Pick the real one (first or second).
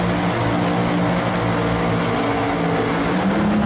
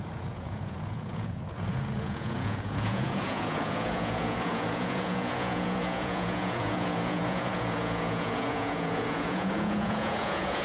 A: first